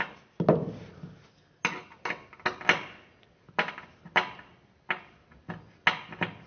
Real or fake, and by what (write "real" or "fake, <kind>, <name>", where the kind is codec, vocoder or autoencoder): real